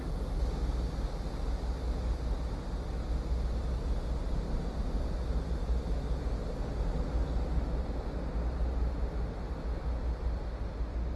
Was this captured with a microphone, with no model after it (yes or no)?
yes